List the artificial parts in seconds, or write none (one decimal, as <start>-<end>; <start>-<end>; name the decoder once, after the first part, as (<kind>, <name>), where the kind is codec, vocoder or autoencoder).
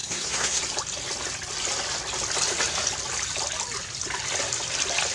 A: 0.0-0.6 (codec, SNAC)